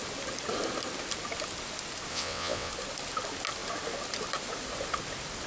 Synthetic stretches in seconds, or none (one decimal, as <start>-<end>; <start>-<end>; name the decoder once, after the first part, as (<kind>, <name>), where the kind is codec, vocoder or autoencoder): 2.1-2.7 (vocoder, WaveNeXt)